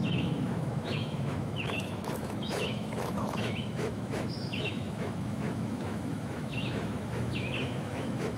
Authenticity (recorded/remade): remade